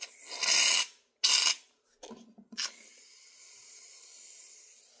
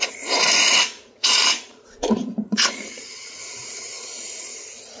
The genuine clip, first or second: first